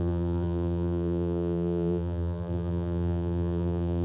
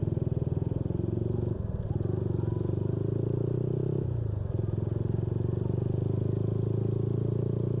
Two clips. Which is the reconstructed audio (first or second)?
first